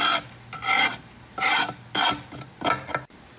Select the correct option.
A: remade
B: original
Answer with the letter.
B